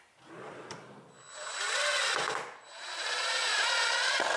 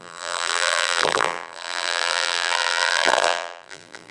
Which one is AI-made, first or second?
second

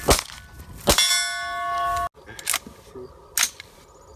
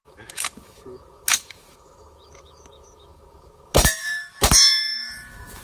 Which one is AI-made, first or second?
second